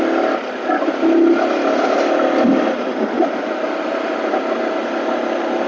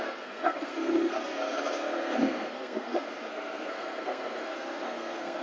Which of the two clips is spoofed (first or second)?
second